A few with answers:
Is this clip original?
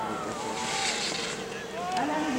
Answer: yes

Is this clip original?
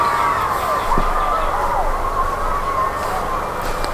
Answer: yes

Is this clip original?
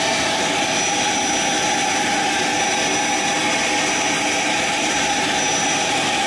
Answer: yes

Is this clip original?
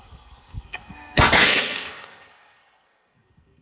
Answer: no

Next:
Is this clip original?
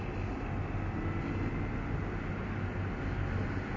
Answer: yes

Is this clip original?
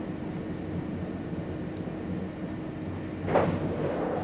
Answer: yes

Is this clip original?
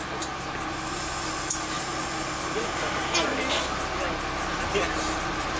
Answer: yes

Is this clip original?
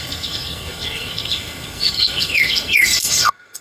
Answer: no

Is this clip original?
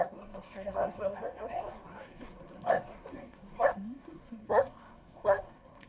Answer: no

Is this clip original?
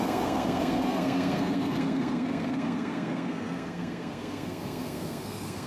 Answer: no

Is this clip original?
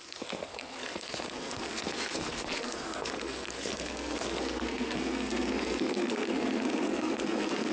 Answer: no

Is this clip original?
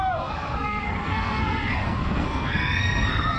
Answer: no